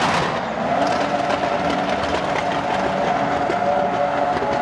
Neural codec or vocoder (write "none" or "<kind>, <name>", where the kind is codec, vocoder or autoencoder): none